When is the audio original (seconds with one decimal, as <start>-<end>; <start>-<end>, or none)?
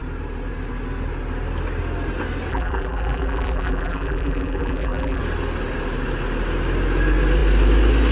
0.0-2.5; 5.2-8.1